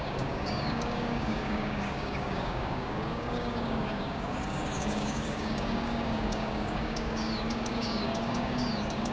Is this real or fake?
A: fake